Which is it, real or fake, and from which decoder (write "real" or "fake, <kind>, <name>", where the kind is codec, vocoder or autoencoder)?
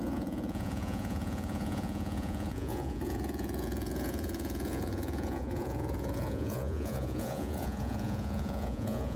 fake, vocoder, Vocos